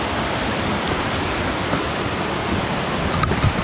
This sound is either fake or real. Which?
real